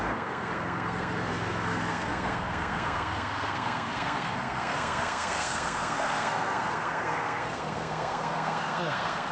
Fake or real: fake